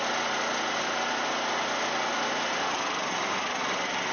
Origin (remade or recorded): recorded